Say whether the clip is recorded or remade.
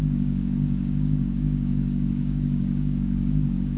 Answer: remade